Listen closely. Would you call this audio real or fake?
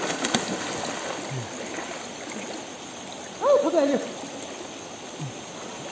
real